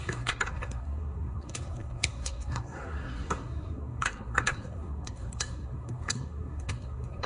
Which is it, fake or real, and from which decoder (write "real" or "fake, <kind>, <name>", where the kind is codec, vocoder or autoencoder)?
fake, codec, SNAC